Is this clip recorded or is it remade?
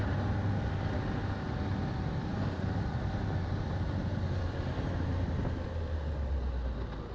recorded